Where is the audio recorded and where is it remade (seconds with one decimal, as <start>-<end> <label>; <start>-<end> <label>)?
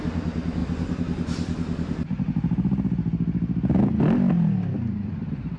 0.0-5.6 recorded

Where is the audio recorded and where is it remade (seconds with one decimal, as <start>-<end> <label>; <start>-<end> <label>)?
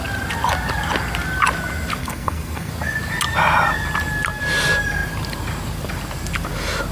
0.0-2.0 recorded; 2.0-2.7 remade; 2.7-6.9 recorded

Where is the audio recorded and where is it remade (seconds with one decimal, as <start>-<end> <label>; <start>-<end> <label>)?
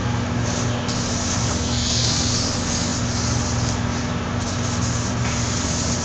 0.0-1.4 recorded; 1.4-2.3 remade; 2.3-6.0 recorded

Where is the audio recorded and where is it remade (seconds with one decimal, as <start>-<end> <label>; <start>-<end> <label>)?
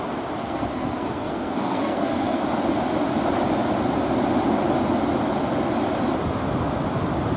0.0-0.4 recorded; 0.4-2.4 remade; 2.4-7.4 recorded